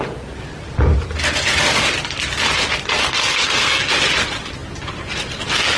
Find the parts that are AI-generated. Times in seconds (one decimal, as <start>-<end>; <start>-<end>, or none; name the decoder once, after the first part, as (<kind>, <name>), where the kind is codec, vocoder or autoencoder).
3.0-3.9 (codec, SNAC)